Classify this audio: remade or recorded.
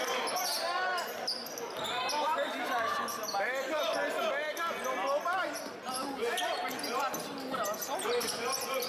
recorded